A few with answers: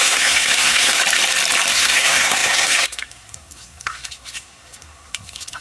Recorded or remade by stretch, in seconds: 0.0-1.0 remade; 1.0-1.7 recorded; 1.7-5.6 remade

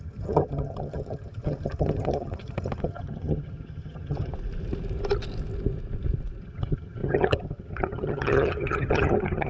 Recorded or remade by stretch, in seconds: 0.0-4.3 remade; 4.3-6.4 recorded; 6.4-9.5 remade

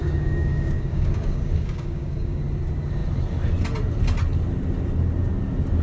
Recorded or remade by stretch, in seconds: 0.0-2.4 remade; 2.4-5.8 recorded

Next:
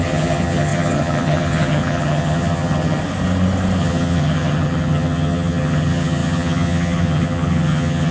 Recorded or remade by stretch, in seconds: 0.0-3.0 remade; 3.0-3.8 recorded; 3.8-8.1 remade

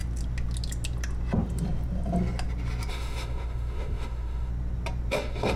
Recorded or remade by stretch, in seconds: 0.0-2.9 recorded; 2.9-4.5 remade; 4.5-5.1 recorded; 5.1-5.6 remade